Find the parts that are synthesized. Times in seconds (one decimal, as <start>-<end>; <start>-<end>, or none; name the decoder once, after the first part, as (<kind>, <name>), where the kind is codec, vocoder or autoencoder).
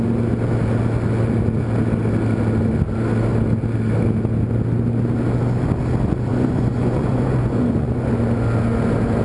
6.3-8.1 (vocoder, Vocos)